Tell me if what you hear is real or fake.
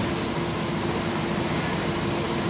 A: real